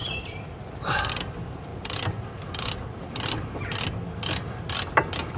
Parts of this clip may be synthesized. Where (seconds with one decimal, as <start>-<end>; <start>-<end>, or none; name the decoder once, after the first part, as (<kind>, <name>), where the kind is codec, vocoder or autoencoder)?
0.0-1.1 (vocoder, BigVGAN v2)